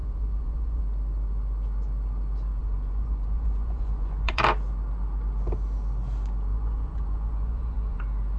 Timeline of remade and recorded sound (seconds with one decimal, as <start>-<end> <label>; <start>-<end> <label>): 0.0-0.8 remade; 0.8-2.6 recorded; 2.6-4.4 remade; 4.4-6.5 recorded; 6.5-8.0 remade; 8.0-8.4 recorded